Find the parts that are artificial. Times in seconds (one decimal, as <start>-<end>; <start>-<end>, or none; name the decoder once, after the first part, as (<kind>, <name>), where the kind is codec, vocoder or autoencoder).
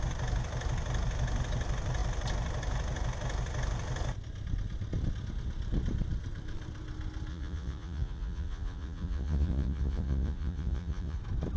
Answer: 7.3-11.2 (vocoder, Vocos)